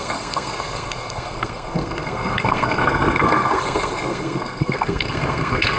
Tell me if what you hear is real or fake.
fake